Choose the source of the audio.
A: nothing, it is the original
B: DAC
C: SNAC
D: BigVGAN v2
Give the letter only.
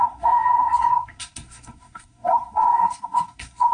C